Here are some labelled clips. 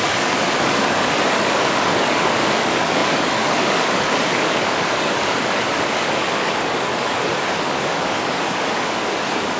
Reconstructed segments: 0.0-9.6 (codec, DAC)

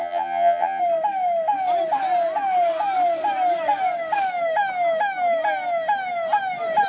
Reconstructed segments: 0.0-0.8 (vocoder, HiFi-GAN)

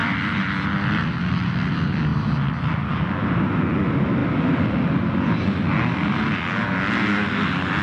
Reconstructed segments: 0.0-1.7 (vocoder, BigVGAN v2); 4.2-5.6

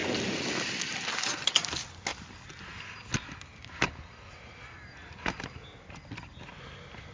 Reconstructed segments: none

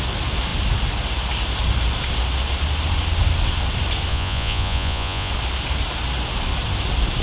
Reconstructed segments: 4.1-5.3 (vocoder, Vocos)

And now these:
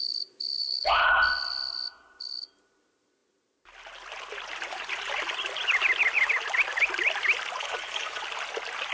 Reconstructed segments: 0.6-1.2 (codec, HILCodec); 7.6-8.2

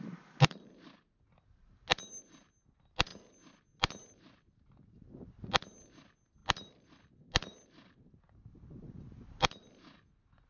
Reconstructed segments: none